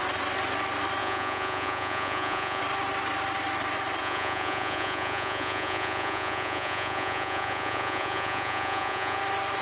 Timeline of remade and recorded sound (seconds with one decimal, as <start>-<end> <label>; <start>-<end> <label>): 0.0-1.0 recorded; 1.0-2.6 remade; 2.6-4.0 recorded; 4.0-9.2 remade; 9.2-9.6 recorded